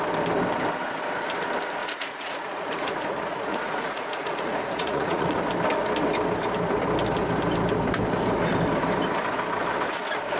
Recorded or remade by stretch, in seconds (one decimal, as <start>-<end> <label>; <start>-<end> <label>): 0.0-1.8 recorded; 1.8-5.4 remade; 5.4-10.4 recorded